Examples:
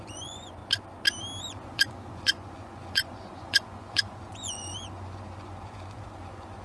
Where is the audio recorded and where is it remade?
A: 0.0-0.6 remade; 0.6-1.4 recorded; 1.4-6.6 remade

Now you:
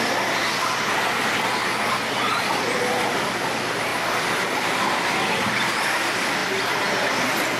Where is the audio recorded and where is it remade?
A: 0.0-7.6 recorded

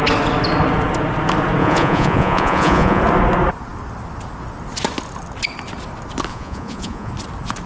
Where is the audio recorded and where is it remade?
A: 0.0-1.6 recorded; 1.6-3.0 remade; 3.0-6.3 recorded; 6.3-7.1 remade; 7.1-7.7 recorded

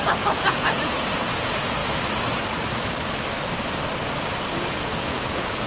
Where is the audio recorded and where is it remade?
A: 0.0-1.8 remade; 1.8-4.5 recorded; 4.5-5.7 remade

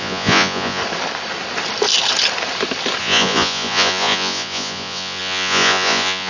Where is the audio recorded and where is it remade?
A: 0.0-0.8 remade; 0.8-3.0 recorded; 3.0-6.3 remade

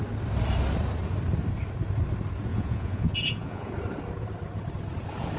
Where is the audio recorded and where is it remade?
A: 0.0-2.5 recorded; 2.5-3.7 remade; 3.7-5.4 recorded

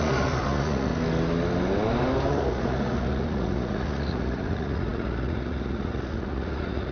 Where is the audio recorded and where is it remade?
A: 0.0-0.9 remade; 0.9-2.3 recorded; 2.3-6.9 remade

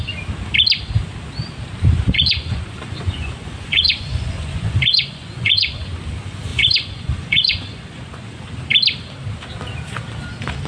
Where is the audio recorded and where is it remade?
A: 0.0-2.1 recorded; 2.1-6.0 remade; 6.0-6.5 recorded; 6.5-8.5 remade; 8.5-10.7 recorded